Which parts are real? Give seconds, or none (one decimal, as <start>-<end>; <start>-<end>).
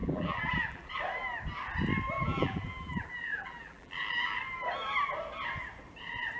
0.9-2.2; 4.4-6.4